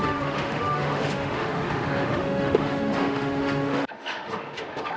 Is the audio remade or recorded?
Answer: remade